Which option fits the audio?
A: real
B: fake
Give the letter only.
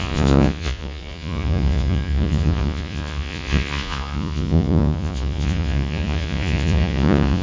B